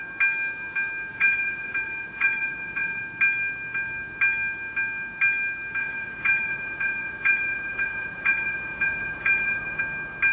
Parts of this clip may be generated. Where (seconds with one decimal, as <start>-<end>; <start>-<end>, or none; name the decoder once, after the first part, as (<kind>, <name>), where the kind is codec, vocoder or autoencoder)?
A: 1.1-3.0 (vocoder, Vocos); 5.8-9.8